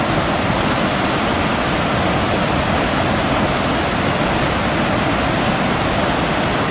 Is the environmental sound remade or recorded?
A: recorded